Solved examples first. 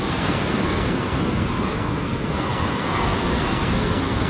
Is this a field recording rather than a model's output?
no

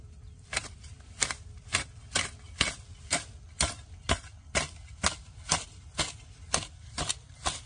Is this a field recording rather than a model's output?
yes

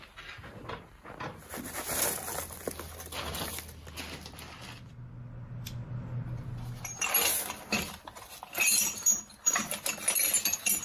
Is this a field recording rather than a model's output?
yes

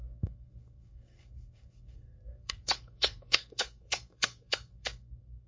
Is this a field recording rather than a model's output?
no